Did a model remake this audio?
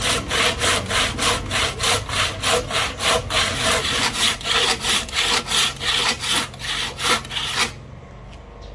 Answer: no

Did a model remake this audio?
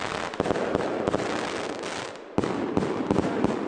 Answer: no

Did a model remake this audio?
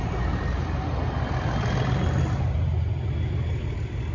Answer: no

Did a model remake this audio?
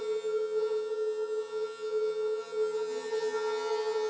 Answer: yes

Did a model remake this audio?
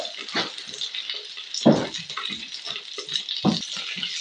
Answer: no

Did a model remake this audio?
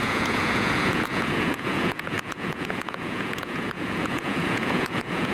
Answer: yes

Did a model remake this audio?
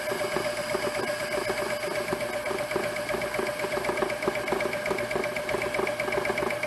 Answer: no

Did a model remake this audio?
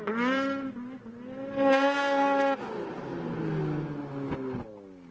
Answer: no